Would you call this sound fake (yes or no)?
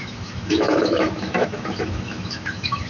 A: yes